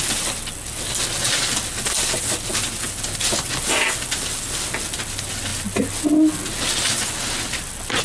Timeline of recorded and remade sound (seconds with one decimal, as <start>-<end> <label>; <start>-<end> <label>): 0.0-8.0 recorded